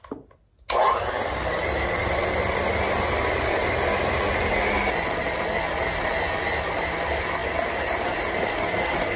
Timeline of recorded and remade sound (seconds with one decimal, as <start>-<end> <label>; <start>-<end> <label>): 0.0-9.2 recorded